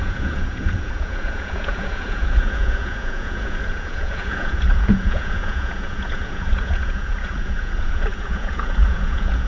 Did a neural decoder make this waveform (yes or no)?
yes